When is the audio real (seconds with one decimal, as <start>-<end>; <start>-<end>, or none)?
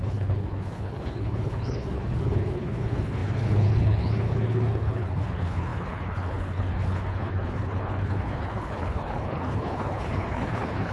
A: none